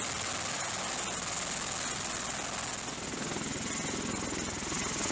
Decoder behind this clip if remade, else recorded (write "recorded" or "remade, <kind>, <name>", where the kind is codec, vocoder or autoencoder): recorded